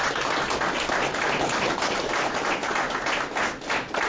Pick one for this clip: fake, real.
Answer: real